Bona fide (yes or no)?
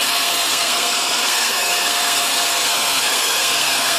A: no